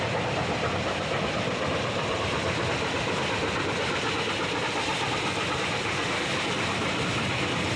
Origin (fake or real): fake